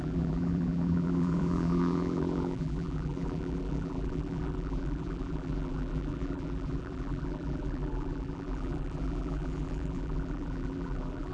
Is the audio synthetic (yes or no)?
yes